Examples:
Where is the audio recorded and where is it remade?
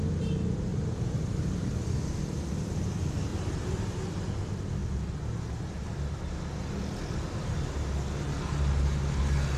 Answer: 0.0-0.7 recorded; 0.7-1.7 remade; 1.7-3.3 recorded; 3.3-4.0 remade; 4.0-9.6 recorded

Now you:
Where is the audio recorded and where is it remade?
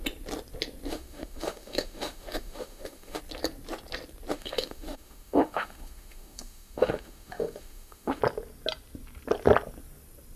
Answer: 0.0-0.9 recorded; 0.9-3.2 remade; 3.2-4.3 recorded; 4.3-8.2 remade; 8.2-10.4 recorded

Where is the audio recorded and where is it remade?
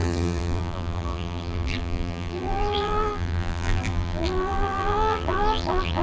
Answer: 0.0-6.0 remade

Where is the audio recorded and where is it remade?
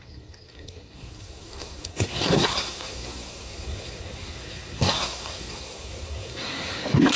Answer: 0.0-7.2 remade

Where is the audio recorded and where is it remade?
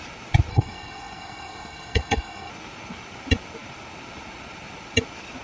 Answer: 0.0-0.5 recorded; 0.5-2.5 remade; 2.5-5.4 recorded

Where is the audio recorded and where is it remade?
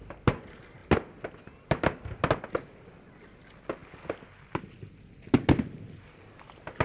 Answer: 0.0-6.8 recorded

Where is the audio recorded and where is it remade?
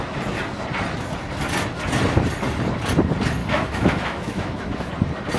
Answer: 0.0-3.4 recorded; 3.4-4.9 remade; 4.9-5.4 recorded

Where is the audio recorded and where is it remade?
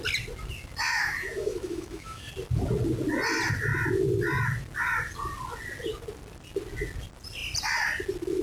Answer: 0.0-1.0 recorded; 1.0-2.3 remade; 2.3-8.4 recorded